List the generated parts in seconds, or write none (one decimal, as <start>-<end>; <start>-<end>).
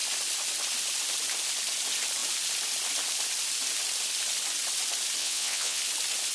5.2-5.8